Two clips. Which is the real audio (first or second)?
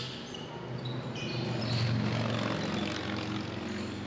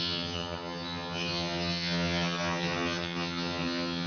first